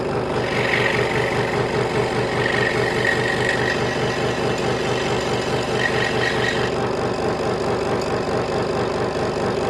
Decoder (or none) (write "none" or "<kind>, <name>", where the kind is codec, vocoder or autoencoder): none